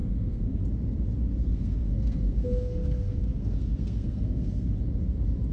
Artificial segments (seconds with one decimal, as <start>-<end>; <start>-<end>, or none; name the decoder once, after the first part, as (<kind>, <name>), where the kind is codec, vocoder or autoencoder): 0.0-0.6 (codec, SNAC); 1.4-4.7